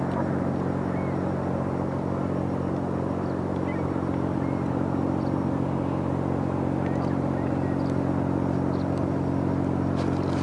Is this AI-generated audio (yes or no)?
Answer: no